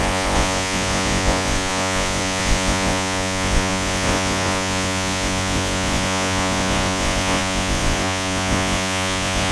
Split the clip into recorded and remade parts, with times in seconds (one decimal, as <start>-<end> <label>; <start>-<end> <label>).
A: 0.0-9.5 remade